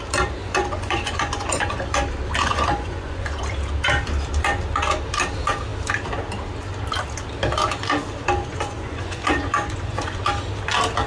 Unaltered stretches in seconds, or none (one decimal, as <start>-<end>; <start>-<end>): 0.0-0.4; 1.8-2.4; 3.4-8.4; 10.2-11.1